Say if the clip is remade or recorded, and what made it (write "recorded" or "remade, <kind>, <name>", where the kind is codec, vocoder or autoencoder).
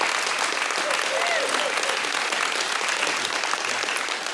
recorded